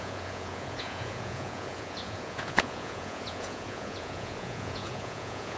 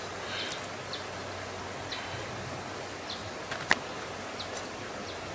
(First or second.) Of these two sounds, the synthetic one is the first